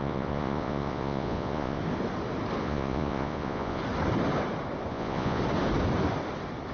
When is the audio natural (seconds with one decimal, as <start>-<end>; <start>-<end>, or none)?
1.8-2.6; 3.8-4.9; 5.4-6.7